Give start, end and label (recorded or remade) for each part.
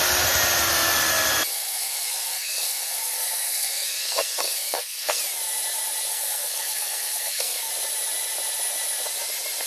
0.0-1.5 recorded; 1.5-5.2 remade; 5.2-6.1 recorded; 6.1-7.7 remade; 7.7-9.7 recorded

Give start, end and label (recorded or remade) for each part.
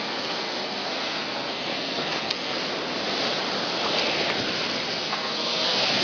0.0-2.6 remade; 2.6-4.9 recorded; 4.9-6.0 remade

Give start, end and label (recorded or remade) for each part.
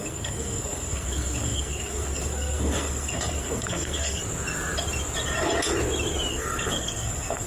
0.0-4.2 remade; 4.2-6.3 recorded; 6.3-7.5 remade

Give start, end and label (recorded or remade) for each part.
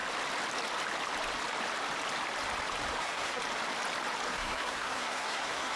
0.0-3.0 recorded; 3.0-3.4 remade; 3.4-4.3 recorded; 4.3-5.8 remade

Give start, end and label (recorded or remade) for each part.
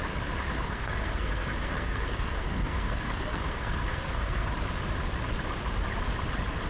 0.0-0.5 recorded; 0.5-4.5 remade; 4.5-6.7 recorded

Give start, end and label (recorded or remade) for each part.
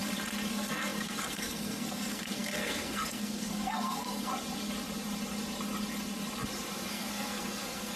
0.0-0.5 recorded; 0.5-4.3 remade; 4.3-6.9 recorded; 6.9-8.0 remade